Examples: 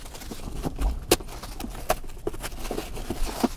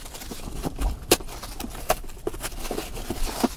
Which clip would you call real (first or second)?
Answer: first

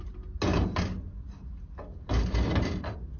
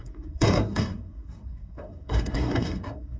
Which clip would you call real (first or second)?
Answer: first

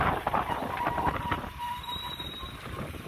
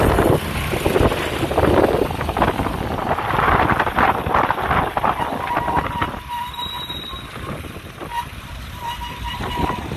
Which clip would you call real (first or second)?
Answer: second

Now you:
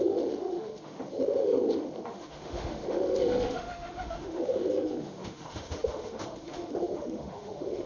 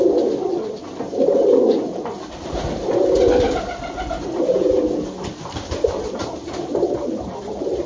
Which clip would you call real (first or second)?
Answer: second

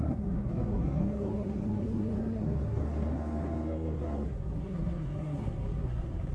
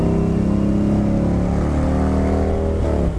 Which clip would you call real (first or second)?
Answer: second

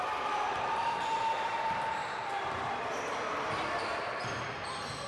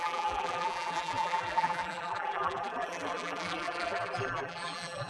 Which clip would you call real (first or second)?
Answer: first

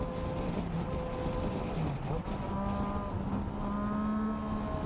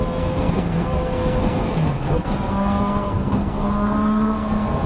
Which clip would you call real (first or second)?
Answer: first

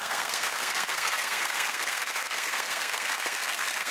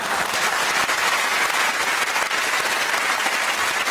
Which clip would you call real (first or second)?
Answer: second